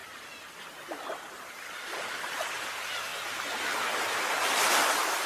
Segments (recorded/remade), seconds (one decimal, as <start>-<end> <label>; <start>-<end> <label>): 0.0-3.1 remade; 3.1-4.2 recorded; 4.2-5.3 remade